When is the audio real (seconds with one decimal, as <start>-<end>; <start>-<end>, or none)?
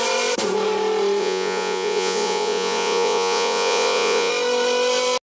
0.0-1.2; 4.3-5.2